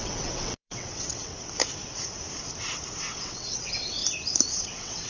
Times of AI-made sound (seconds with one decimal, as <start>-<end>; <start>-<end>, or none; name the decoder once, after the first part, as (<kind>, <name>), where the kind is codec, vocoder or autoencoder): 0.0-1.3 (vocoder, WaveNeXt); 3.0-4.0; 4.6-5.1